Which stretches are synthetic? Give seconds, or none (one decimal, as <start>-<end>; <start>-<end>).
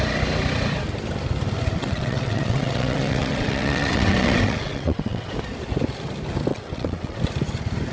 1.8-5.3; 6.5-7.2